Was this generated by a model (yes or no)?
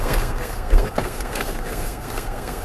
yes